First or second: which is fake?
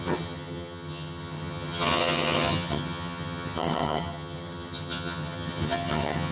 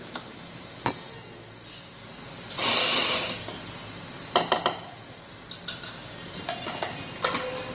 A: first